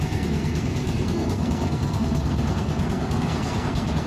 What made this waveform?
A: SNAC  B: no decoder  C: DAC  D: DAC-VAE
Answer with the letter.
A